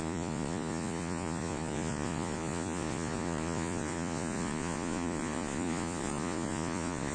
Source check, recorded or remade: remade